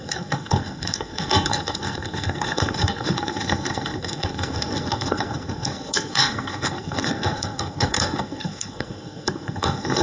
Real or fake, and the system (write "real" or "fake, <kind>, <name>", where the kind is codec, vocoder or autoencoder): fake, codec, SNAC